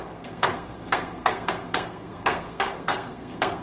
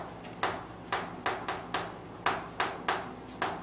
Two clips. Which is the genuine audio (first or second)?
second